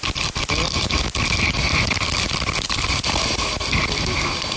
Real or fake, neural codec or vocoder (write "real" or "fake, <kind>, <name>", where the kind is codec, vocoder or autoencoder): real